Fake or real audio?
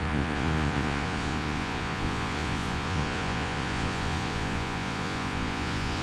fake